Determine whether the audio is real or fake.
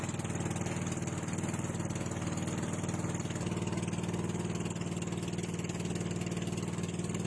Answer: real